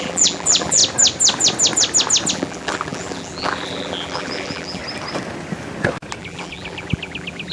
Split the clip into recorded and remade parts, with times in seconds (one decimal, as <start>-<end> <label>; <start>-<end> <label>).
0.0-0.8 remade; 0.8-2.3 recorded; 2.3-4.8 remade; 4.8-6.2 recorded; 6.2-7.5 remade